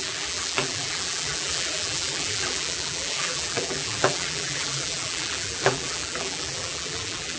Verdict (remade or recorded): remade